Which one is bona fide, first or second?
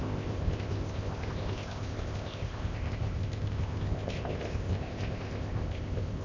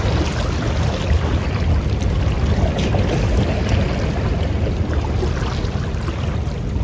second